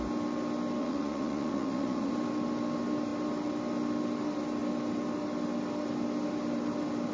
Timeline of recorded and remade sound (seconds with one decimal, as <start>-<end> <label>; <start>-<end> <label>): 0.0-0.8 recorded; 0.8-2.1 remade; 2.1-7.1 recorded